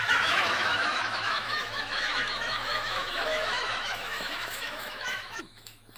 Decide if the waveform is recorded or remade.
remade